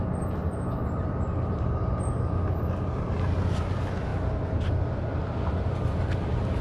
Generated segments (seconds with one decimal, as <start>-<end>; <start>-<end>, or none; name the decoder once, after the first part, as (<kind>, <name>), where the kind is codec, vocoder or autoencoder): none